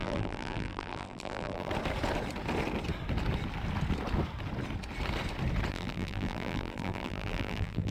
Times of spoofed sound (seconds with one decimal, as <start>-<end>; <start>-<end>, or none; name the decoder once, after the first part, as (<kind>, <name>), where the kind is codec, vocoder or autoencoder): 0.0-1.7 (vocoder, BigVGAN v2); 5.7-7.9